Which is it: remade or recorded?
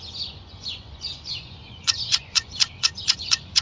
remade